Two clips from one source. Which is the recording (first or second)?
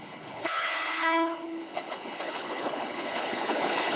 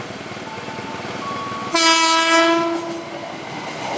second